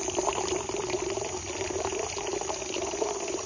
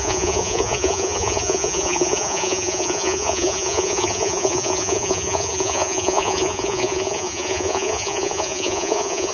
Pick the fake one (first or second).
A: second